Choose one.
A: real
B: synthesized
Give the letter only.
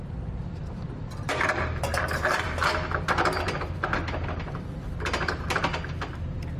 B